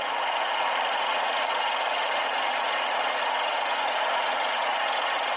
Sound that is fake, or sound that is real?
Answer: fake